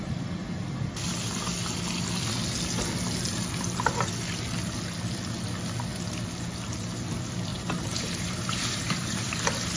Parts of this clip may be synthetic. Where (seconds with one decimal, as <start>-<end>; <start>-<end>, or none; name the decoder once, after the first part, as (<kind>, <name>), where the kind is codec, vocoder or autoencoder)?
7.5-9.3 (vocoder, BigVGAN v2)